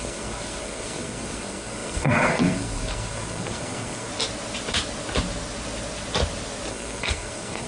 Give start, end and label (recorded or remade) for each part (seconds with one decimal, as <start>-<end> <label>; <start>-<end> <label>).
0.0-4.1 remade; 4.1-6.7 recorded; 6.7-7.7 remade